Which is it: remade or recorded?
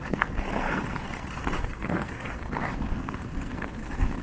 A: remade